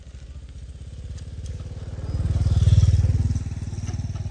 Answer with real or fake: real